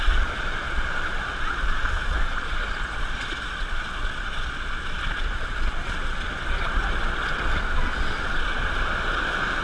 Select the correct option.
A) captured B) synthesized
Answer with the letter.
B